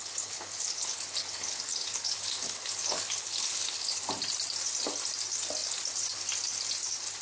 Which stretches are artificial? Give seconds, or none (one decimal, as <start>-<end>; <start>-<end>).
0.0-4.0